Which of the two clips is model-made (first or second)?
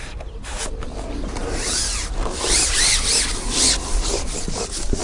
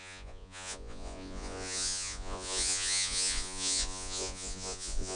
second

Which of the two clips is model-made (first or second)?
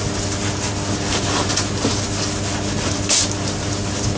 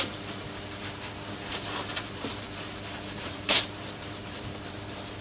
second